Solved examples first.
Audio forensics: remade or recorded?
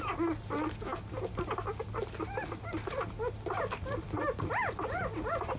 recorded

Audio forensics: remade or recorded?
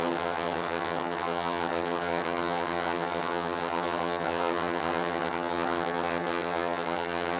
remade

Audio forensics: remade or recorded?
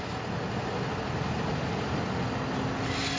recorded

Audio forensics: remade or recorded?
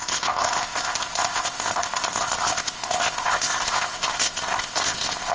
remade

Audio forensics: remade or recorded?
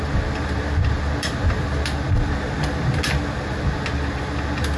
recorded